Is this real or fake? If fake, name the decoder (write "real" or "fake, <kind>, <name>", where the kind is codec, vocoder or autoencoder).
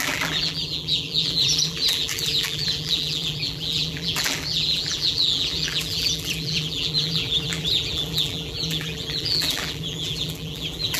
fake, vocoder, BigVGAN v2